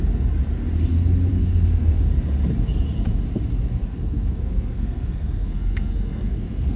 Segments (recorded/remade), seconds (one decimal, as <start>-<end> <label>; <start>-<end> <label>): 0.0-1.3 recorded; 1.3-2.0 remade; 2.0-3.8 recorded; 3.8-6.8 remade

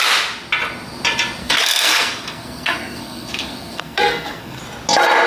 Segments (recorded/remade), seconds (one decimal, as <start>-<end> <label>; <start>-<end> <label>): 0.0-1.4 recorded; 1.4-4.6 remade; 4.6-5.3 recorded